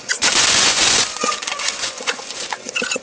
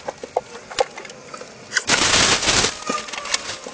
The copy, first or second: first